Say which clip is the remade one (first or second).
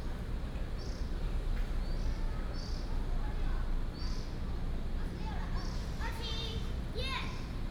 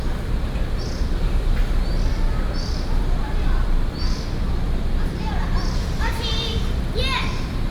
second